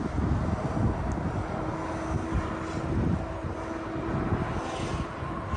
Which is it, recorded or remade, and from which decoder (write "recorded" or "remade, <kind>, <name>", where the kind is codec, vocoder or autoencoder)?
recorded